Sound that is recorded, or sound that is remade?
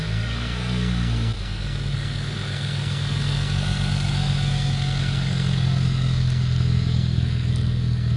remade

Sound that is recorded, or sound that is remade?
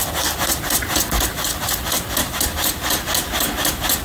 recorded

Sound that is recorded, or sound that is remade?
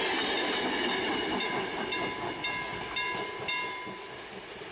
recorded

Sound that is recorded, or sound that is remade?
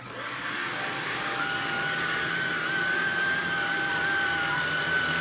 recorded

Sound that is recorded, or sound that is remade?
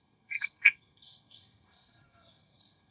remade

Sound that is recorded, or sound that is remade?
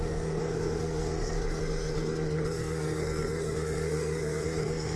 remade